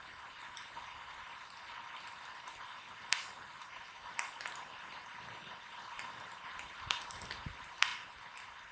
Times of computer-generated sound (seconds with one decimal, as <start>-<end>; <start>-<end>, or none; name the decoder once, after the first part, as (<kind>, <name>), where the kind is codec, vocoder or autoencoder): none